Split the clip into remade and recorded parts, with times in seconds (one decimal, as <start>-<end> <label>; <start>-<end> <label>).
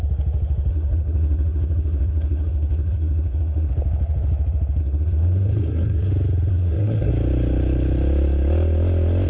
0.0-0.7 recorded; 0.7-3.7 remade; 3.7-4.8 recorded; 4.8-6.1 remade; 6.1-6.5 recorded; 6.5-7.1 remade; 7.1-9.3 recorded